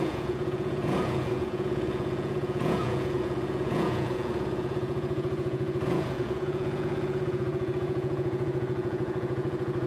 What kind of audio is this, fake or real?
fake